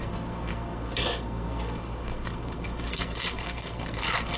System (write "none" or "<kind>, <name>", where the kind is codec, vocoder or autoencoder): codec, SNAC